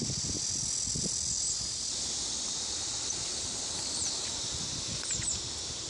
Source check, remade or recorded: recorded